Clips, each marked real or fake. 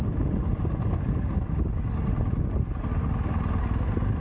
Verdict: real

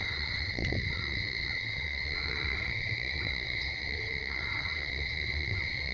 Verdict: fake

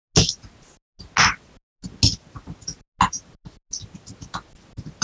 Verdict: real